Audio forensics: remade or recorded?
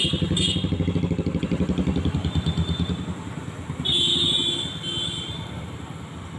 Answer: recorded